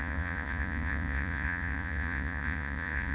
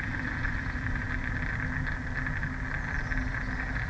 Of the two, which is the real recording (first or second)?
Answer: second